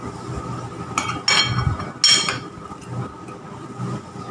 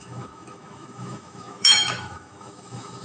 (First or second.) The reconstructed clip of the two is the second